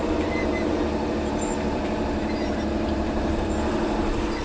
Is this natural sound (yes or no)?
no